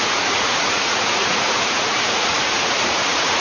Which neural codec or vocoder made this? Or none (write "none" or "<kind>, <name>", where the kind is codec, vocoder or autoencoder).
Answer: vocoder, Vocos